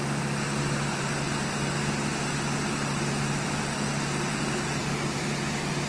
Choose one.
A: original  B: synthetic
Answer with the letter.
A